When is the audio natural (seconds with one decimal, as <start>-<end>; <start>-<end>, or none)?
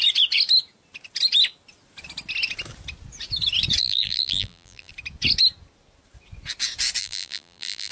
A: 0.0-3.8; 4.9-7.0